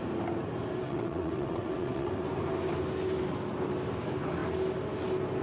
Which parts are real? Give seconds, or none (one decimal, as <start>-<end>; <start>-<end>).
0.0-0.8; 2.1-5.4